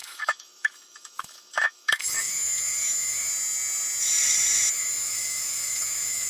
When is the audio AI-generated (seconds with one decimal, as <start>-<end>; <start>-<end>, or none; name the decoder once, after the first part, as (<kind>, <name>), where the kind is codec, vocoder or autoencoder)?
0.0-3.3 (autoencoder, DAC-VAE); 4.7-6.3